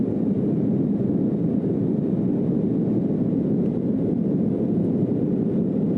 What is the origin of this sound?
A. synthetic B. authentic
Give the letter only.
B